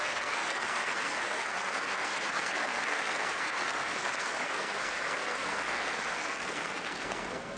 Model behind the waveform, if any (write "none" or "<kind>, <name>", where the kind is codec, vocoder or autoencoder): codec, SNAC